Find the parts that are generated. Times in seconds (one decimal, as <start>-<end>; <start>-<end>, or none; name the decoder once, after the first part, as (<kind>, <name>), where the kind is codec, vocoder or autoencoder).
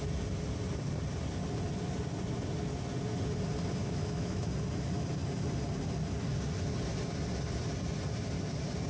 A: 3.8-4.5 (autoencoder, DAC-VAE)